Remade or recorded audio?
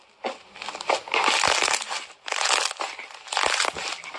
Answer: recorded